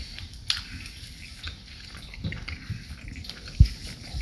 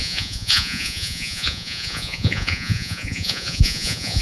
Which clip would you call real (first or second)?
first